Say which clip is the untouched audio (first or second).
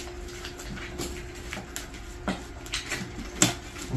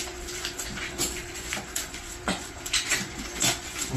first